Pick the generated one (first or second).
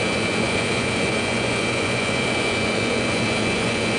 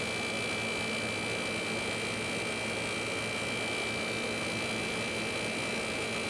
first